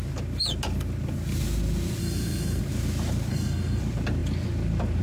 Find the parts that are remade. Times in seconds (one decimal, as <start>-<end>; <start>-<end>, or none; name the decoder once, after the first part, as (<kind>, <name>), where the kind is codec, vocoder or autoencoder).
2.0-2.6 (codec, SNAC); 3.3-3.8